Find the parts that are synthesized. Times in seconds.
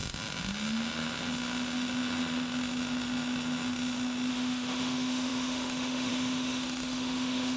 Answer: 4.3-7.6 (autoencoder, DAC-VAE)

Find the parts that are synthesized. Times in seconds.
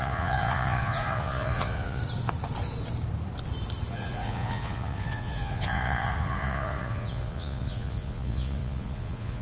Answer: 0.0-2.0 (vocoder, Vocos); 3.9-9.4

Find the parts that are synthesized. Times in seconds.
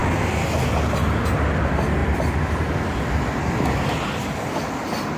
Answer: none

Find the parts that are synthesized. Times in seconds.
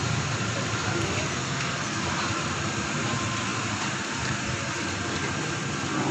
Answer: 1.3-2.0 (codec, SNAC)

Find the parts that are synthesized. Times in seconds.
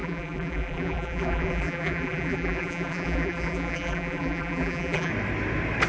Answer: 0.0-5.1 (vocoder, BigVGAN v2)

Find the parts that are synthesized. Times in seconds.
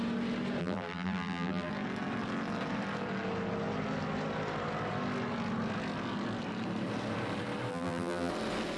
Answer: 0.6-1.7 (vocoder, BigVGAN v2); 7.7-8.3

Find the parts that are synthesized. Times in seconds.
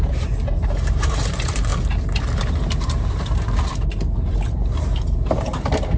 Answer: 0.0-1.7 (vocoder, BigVGAN v2); 2.4-6.0